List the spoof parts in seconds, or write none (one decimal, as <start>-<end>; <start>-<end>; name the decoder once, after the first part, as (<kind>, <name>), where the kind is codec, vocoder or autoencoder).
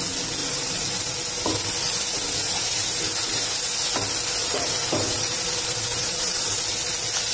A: 0.4-1.0 (vocoder, BigVGAN v2); 2.4-3.0; 4.4-5.4; 5.9-6.6